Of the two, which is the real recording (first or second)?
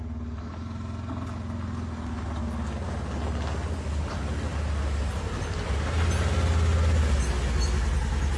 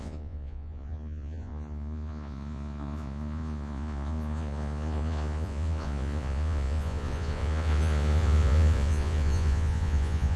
first